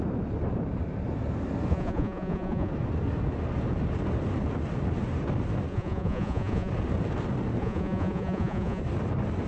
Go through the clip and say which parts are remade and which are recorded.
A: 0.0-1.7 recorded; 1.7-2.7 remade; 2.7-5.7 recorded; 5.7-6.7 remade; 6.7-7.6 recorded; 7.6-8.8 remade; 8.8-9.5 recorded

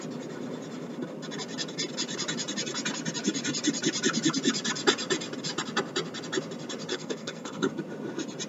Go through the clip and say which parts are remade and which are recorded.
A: 0.0-6.9 recorded; 6.9-7.7 remade; 7.7-8.5 recorded

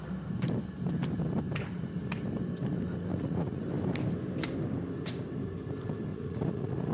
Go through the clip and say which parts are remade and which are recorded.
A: 0.0-3.1 recorded; 3.1-3.6 remade; 3.6-6.1 recorded; 6.1-6.9 remade

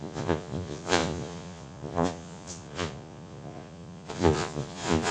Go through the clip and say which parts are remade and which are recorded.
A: 0.0-5.1 remade